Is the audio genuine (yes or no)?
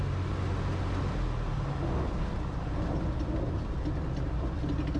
yes